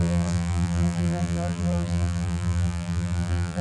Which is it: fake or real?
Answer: fake